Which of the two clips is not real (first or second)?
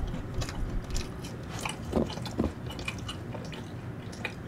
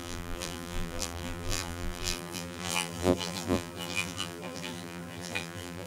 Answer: second